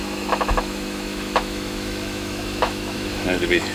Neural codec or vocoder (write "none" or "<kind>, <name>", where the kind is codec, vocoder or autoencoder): autoencoder, DAC-VAE